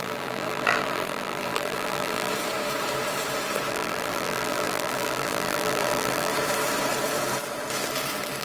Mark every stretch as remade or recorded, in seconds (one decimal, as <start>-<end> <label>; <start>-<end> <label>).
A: 0.0-2.3 remade; 2.3-3.7 recorded; 3.7-6.3 remade; 6.3-8.4 recorded